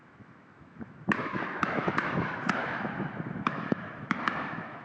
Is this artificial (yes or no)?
yes